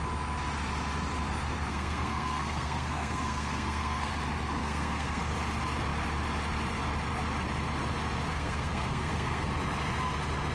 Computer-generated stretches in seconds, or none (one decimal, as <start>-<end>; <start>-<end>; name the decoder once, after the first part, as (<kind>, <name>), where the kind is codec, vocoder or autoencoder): 1.7-4.1 (codec, SNAC); 4.6-5.2; 8.3-9.5